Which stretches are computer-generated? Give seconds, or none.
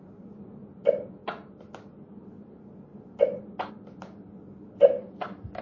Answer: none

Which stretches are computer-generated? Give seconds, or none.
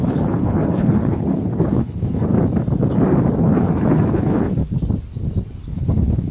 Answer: 0.0-2.3; 3.4-4.6; 5.5-6.3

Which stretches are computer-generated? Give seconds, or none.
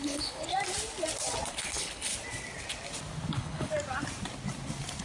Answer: 0.0-0.5; 1.5-2.1; 3.3-3.7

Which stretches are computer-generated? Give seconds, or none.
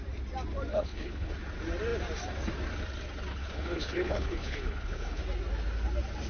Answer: 0.7-1.3; 3.3-5.2